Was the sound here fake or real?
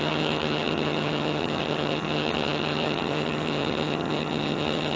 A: fake